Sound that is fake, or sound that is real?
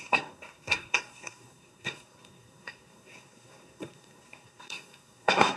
fake